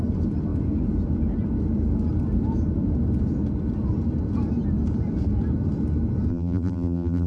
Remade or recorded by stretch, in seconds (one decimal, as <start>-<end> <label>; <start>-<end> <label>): 0.0-6.3 recorded; 6.3-7.3 remade